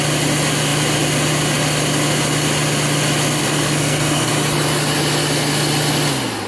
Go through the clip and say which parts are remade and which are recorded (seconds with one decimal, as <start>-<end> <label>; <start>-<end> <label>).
0.0-3.4 recorded; 3.4-4.3 remade; 4.3-6.5 recorded